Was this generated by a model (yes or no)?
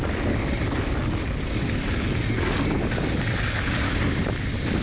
no